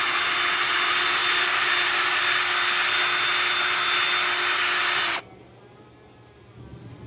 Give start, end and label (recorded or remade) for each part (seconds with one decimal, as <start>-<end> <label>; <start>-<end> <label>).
0.0-7.1 recorded

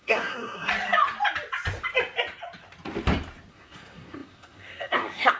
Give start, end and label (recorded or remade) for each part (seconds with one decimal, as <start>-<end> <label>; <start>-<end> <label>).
0.0-0.7 remade; 0.7-3.5 recorded; 3.5-5.4 remade

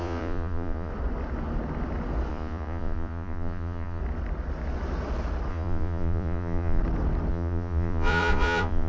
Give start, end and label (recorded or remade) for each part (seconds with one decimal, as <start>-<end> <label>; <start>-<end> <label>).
0.0-0.9 remade; 0.9-2.3 recorded; 2.3-4.0 remade; 4.0-5.5 recorded; 5.5-6.8 remade; 6.8-7.3 recorded; 7.3-8.9 remade